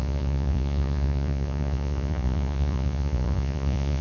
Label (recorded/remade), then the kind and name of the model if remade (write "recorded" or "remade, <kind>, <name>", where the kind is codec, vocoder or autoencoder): remade, vocoder, Vocos